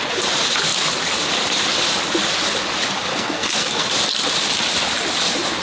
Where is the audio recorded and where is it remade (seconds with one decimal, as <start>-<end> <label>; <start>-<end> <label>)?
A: 0.0-3.1 recorded; 3.1-3.9 remade; 3.9-5.6 recorded